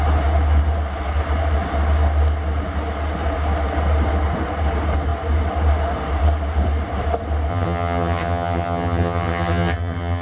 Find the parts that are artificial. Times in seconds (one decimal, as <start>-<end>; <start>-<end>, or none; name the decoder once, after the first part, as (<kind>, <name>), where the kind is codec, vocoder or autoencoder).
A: 7.5-10.2 (vocoder, HiFi-GAN)